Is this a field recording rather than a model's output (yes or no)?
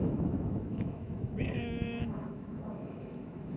no